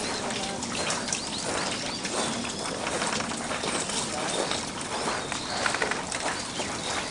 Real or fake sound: real